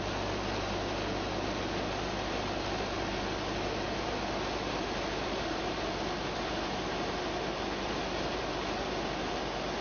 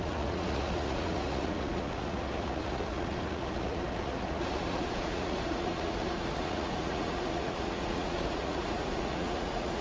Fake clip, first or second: second